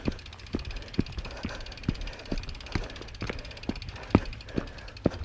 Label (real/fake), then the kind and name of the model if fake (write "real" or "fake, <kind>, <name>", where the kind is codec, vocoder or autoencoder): real